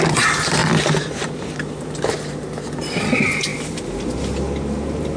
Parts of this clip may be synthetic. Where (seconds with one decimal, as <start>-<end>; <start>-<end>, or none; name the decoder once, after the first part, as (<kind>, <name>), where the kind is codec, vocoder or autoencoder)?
none